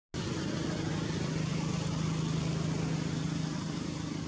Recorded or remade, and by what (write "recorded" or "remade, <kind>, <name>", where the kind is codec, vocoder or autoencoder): recorded